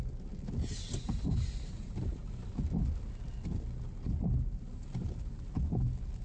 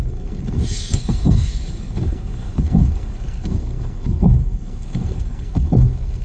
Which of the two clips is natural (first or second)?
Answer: first